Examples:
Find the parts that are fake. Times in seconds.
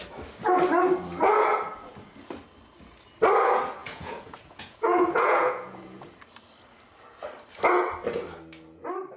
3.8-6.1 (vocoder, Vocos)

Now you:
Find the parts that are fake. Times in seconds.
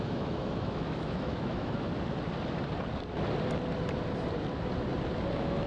0.0-1.9 (autoencoder, DAC-VAE); 5.3-5.7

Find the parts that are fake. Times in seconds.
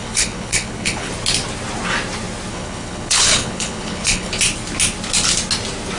0.0-1.1 (codec, HILCodec); 2.5-4.3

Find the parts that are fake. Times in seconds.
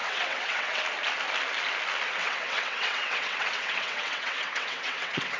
0.0-0.8 (vocoder, WaveNeXt); 2.2-5.4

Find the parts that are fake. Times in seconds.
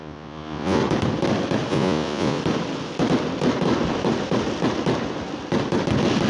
0.0-0.8 (vocoder, Vocos); 1.7-2.4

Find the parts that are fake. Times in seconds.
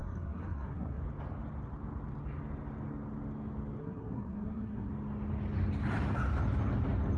0.0-1.0 (codec, SNAC); 3.8-4.9